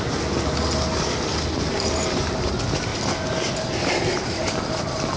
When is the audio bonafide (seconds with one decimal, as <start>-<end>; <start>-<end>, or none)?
0.0-5.2